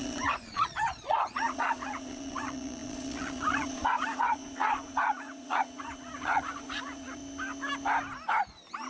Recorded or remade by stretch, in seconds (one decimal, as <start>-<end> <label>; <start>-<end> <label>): 0.0-7.2 remade; 7.2-8.9 recorded

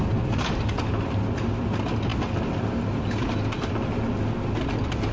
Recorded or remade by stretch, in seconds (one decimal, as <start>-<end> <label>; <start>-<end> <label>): 0.0-5.1 recorded

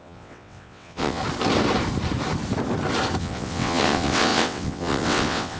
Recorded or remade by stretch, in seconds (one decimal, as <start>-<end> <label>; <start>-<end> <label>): 0.0-1.2 remade; 1.2-3.2 recorded; 3.2-5.6 remade

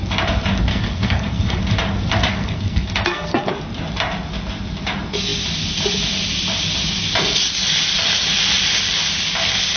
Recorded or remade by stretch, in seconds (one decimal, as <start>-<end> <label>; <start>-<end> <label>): 0.0-0.7 recorded; 0.7-1.6 remade; 1.6-2.3 recorded; 2.3-3.5 remade; 3.5-9.8 recorded